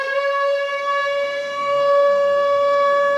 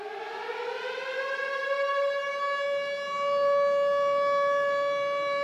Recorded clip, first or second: second